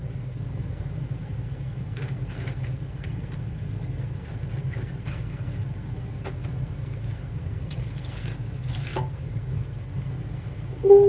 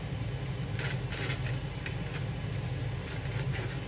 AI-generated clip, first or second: first